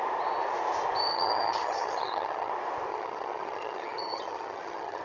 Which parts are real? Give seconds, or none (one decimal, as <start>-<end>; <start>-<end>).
0.0-1.1; 2.5-2.9

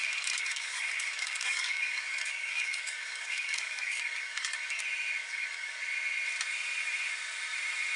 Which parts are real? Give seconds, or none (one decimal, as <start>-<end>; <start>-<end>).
4.8-5.2; 5.8-8.0

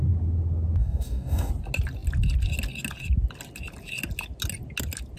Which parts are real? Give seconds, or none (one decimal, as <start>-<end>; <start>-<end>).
0.0-0.8; 1.5-5.2

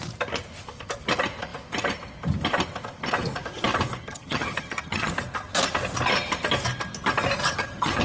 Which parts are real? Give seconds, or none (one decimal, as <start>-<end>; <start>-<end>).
0.0-4.0; 5.1-7.4

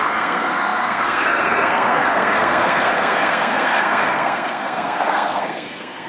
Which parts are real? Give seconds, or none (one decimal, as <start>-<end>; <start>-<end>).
none